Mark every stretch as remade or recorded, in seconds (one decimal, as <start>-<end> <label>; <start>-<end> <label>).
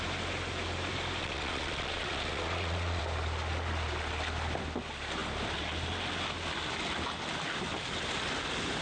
0.0-1.2 recorded; 1.2-3.0 remade; 3.0-8.8 recorded